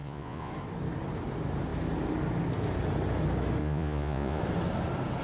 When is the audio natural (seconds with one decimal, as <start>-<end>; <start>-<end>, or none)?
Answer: 0.5-3.6; 4.4-5.2